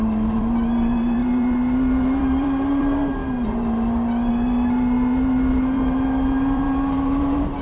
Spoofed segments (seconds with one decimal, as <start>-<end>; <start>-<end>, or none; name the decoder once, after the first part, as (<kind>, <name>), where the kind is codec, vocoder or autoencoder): 0.0-7.6 (vocoder, BigVGAN v2)